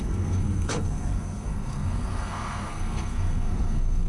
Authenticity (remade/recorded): remade